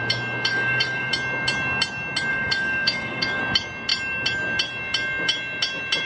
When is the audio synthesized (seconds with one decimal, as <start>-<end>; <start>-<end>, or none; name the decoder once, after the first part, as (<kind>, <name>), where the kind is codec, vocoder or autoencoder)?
0.5-1.1 (codec, DAC); 2.3-3.4